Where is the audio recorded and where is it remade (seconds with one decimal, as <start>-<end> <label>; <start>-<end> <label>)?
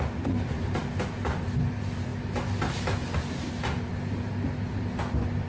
0.0-5.5 recorded